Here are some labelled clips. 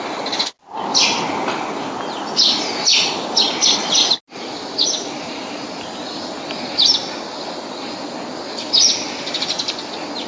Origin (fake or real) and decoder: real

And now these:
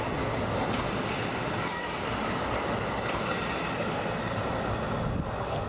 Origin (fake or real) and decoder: real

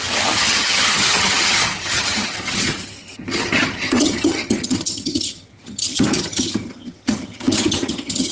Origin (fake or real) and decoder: fake, vocoder, HiFi-GAN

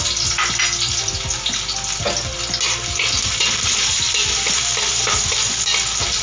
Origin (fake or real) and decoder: real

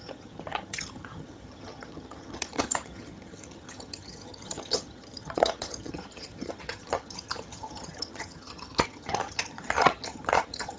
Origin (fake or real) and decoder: fake, vocoder, HiFi-GAN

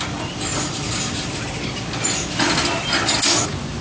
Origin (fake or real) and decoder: real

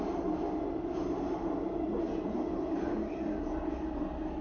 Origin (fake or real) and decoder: real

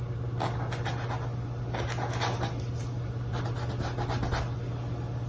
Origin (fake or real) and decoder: real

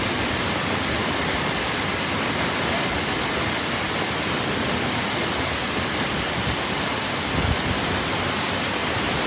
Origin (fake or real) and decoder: real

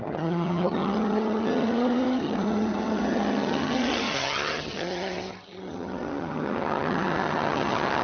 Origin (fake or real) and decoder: fake, vocoder, HiFi-GAN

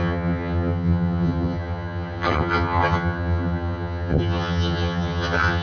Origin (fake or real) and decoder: fake, vocoder, HiFi-GAN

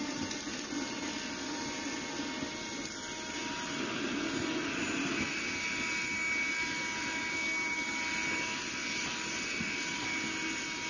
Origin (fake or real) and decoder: real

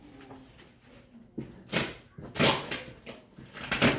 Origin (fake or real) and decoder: real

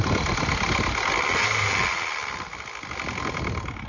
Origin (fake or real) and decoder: real